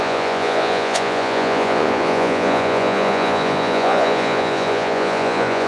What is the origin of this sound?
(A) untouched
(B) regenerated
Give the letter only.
B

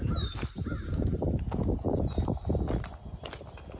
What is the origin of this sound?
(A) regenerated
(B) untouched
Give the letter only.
B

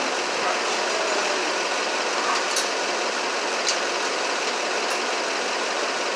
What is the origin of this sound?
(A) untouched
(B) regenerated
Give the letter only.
A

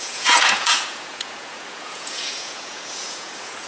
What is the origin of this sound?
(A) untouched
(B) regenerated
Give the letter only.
B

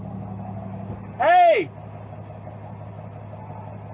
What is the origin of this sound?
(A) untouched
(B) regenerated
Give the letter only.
A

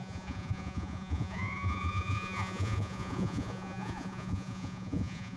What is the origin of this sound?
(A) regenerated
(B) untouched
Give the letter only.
A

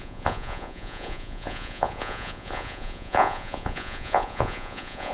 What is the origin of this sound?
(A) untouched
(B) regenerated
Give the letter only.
B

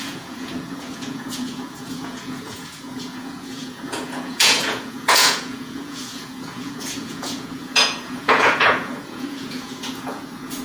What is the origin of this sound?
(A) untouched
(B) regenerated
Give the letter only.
B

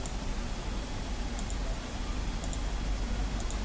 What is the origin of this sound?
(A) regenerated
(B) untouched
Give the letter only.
B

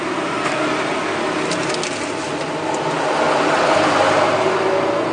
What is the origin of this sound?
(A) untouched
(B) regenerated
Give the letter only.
A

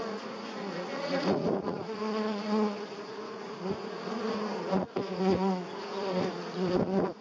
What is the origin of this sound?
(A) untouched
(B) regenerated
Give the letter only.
B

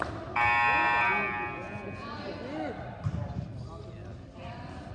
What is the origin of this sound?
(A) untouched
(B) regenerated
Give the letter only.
A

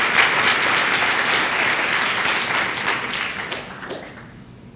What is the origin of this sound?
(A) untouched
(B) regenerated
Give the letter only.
A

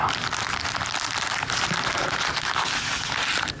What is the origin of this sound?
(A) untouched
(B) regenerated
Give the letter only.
A